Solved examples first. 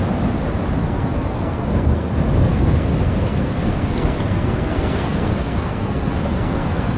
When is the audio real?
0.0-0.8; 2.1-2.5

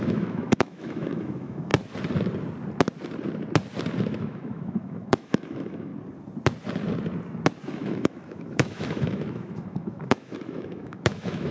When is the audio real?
1.7-4.0; 5.9-7.7

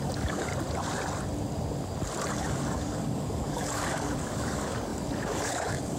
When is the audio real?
0.5-2.3

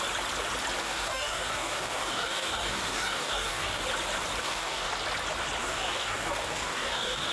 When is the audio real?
0.0-0.8; 3.8-4.4; 4.9-5.6

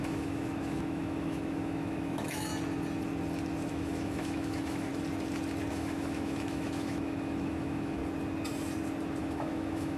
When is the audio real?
2.5-3.7; 4.9-5.7; 8.0-9.2